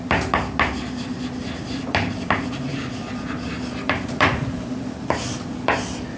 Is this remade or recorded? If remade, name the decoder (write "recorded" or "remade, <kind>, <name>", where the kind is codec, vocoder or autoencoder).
recorded